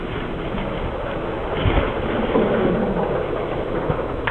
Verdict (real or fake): real